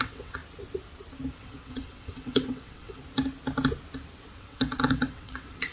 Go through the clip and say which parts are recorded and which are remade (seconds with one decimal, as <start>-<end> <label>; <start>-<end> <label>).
0.0-0.4 remade; 0.4-1.3 recorded; 1.3-3.0 remade; 3.0-4.3 recorded; 4.3-5.7 remade